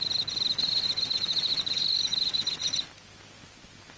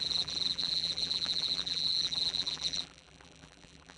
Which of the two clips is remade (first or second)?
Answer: second